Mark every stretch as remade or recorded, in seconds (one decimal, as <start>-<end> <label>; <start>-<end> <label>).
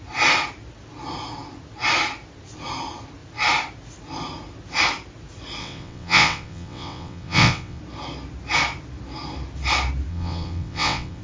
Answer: 0.0-5.6 recorded; 5.6-7.8 remade; 7.8-10.1 recorded; 10.1-11.2 remade